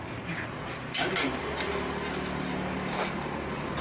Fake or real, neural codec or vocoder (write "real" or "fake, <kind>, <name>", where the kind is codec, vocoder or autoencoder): real